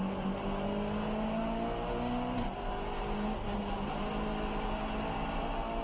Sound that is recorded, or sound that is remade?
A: recorded